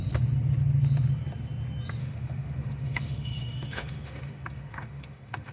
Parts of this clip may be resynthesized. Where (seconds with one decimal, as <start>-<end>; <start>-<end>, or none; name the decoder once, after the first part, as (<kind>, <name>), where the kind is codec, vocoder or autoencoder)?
2.0-5.5 (autoencoder, DAC-VAE)